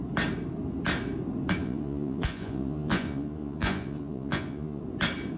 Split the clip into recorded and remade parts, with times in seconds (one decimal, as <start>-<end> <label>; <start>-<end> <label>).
0.0-1.6 recorded; 1.6-4.8 remade; 4.8-5.4 recorded